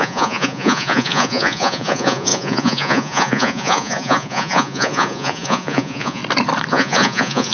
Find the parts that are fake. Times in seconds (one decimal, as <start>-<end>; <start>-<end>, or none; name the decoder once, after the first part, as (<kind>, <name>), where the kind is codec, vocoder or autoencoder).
0.0-6.2 (vocoder, Vocos); 6.7-7.5